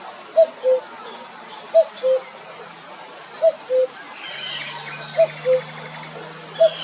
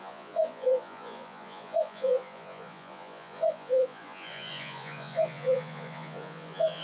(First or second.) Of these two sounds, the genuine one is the first